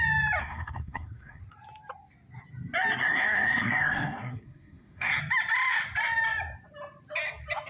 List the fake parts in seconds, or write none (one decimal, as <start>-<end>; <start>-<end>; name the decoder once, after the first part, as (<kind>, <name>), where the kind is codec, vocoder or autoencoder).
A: 0.4-1.4 (codec, SNAC); 3.0-5.2